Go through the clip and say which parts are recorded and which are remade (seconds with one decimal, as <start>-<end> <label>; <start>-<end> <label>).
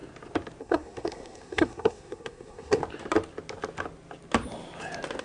0.0-0.6 recorded; 0.6-2.8 remade; 2.8-5.2 recorded